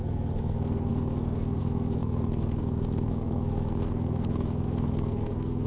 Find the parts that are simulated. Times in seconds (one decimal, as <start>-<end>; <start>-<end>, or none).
0.0-5.7